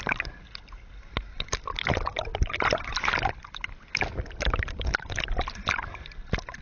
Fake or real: real